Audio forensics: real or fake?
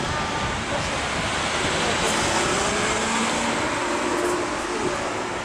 real